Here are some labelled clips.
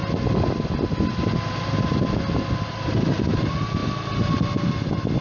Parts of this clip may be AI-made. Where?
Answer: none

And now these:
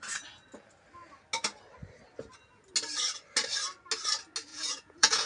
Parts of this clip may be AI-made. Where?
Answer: 4.5-5.3

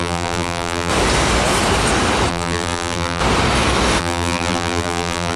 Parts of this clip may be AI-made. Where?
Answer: 0.0-0.9; 2.3-3.2; 4.0-5.4

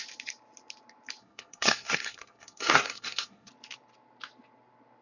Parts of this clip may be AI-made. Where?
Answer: 1.2-3.5

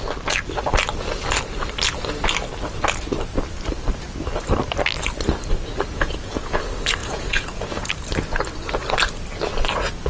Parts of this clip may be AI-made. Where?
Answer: 5.9-6.6; 7.0-7.9

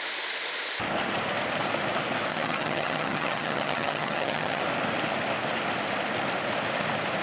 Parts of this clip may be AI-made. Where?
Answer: 2.3-4.6

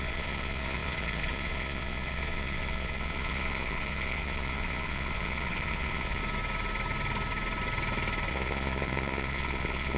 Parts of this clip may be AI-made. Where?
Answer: 0.0-6.2; 8.3-10.0

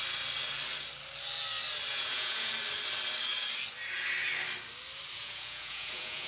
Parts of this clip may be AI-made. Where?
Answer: 1.9-2.5; 5.2-6.3